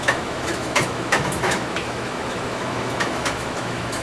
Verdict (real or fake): fake